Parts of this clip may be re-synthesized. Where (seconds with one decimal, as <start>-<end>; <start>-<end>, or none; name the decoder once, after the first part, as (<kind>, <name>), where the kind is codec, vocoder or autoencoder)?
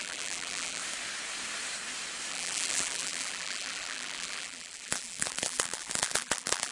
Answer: 0.0-0.8 (vocoder, BigVGAN v2); 2.3-6.7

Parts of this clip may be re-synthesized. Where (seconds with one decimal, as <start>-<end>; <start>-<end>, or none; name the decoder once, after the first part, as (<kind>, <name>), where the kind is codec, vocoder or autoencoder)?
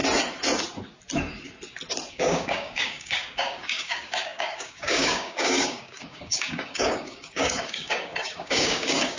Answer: 2.1-9.2 (codec, DAC)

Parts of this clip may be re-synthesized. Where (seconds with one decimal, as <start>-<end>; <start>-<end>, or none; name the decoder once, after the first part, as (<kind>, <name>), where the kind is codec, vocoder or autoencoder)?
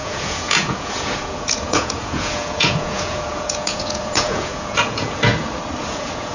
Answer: 0.0-5.3 (vocoder, Vocos); 5.8-6.3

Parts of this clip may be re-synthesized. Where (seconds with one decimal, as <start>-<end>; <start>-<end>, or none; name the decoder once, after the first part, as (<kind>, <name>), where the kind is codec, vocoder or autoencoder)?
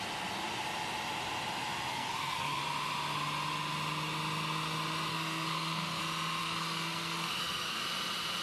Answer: 1.9-2.6 (codec, SNAC); 5.1-6.0; 6.4-7.8